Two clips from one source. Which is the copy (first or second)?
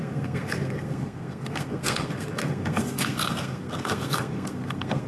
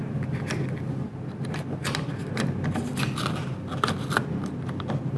first